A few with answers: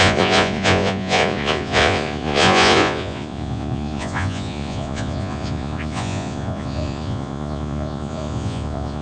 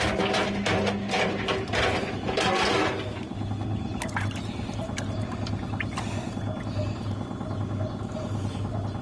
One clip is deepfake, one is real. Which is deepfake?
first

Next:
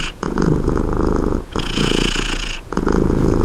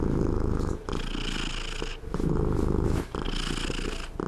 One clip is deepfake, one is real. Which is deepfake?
first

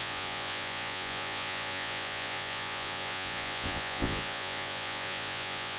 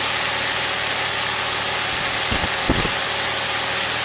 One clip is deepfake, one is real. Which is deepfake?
first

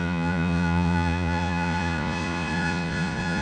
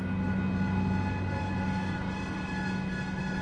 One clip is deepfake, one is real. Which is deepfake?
first